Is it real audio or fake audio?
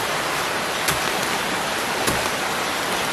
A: real